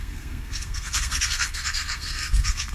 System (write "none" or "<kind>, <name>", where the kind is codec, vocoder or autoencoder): codec, SNAC